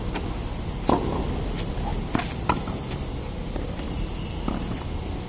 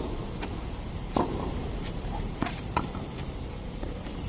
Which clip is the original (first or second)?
first